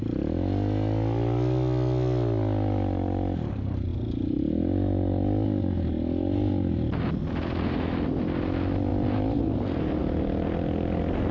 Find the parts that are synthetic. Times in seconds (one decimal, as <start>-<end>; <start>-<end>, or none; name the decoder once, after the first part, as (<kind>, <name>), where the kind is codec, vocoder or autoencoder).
none

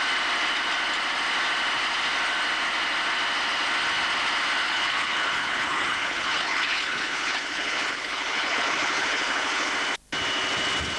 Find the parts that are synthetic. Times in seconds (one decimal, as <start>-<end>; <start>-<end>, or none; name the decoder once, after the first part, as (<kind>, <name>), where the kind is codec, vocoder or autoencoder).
4.6-9.7 (codec, HILCodec)

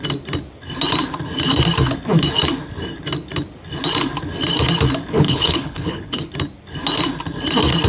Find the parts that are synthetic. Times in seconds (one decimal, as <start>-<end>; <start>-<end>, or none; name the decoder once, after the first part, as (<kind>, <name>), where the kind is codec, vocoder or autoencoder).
5.1-6.3 (codec, HILCodec)